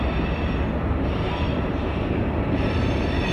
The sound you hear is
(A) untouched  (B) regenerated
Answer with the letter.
B